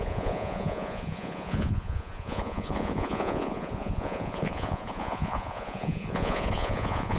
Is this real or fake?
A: fake